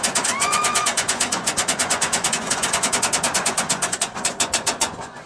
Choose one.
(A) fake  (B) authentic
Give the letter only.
A